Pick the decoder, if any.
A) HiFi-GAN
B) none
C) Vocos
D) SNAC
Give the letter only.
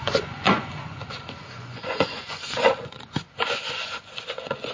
C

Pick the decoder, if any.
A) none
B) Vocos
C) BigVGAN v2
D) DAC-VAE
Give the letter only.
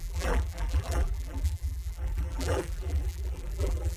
C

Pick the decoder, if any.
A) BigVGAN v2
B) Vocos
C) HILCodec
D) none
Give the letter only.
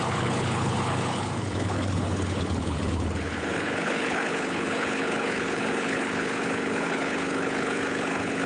C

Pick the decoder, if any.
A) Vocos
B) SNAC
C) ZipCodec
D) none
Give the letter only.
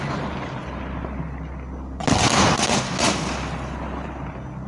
D